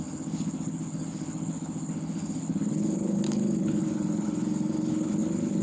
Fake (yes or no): yes